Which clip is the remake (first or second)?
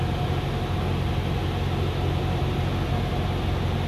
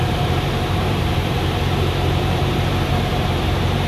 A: second